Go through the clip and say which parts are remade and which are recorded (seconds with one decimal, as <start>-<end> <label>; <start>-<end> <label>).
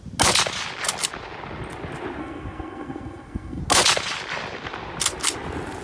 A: 0.0-2.2 recorded; 2.2-3.6 remade; 3.6-5.8 recorded